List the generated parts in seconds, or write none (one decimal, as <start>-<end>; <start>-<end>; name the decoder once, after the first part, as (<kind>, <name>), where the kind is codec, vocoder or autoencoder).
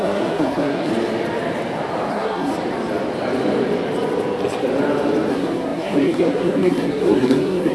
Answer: 0.0-0.9 (codec, SNAC); 2.1-2.5; 5.3-7.7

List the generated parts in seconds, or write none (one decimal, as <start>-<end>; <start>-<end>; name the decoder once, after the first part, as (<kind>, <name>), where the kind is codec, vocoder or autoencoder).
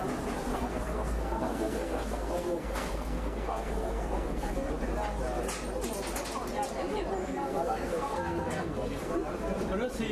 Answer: 0.5-4.7 (codec, SNAC); 7.2-9.1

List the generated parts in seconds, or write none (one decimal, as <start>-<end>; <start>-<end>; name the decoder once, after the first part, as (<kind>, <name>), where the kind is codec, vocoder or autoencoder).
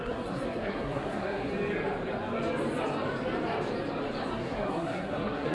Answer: 0.0-1.5 (codec, SNAC); 4.3-5.5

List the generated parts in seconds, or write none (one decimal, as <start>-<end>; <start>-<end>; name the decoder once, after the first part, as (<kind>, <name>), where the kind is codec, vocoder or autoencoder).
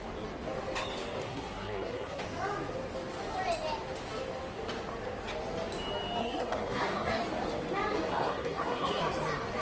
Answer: 1.2-2.2 (codec, SNAC); 6.2-7.2; 8.1-9.0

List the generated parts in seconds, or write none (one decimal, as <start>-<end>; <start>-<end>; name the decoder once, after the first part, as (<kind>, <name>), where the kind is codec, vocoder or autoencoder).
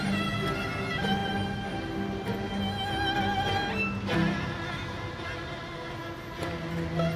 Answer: none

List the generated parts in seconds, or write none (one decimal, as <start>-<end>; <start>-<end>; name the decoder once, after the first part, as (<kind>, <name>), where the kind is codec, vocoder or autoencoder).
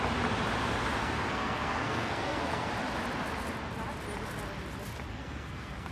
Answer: 1.0-2.7 (codec, SNAC); 5.1-5.9